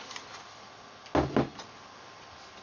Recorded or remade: recorded